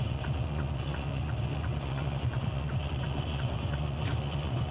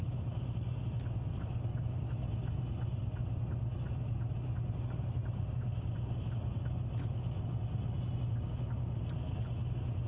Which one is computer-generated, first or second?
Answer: first